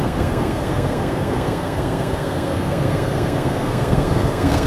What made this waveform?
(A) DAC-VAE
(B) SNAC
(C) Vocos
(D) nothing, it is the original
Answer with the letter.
B